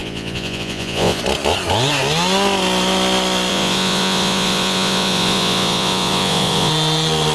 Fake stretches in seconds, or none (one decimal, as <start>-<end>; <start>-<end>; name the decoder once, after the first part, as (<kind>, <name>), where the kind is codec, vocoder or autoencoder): 0.0-1.2 (vocoder, Vocos); 3.5-6.7